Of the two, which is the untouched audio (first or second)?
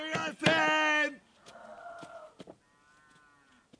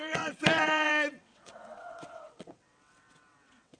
first